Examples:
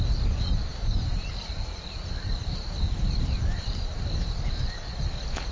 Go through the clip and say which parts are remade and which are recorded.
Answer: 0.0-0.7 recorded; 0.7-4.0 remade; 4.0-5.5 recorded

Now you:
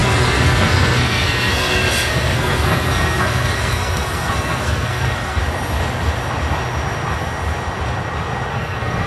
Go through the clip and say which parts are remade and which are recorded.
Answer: 0.0-5.4 remade; 5.4-8.5 recorded; 8.5-9.1 remade